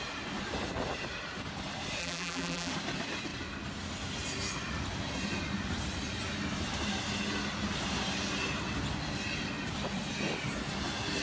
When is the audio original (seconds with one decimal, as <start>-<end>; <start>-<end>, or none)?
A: 0.0-2.0; 2.7-11.2